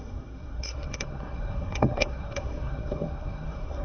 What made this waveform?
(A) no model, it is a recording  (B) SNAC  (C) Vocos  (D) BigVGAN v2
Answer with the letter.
B